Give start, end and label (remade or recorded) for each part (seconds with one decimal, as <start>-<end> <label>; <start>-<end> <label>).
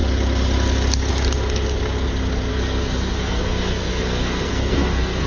0.0-2.5 recorded; 2.5-5.3 remade